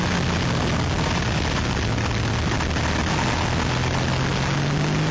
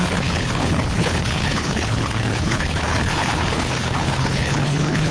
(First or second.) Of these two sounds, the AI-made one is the second